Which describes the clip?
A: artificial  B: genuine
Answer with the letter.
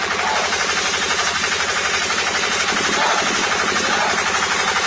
A